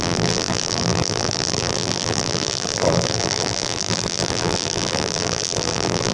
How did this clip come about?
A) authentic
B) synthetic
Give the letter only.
B